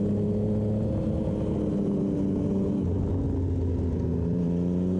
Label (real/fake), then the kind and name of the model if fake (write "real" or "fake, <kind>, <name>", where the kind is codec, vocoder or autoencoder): real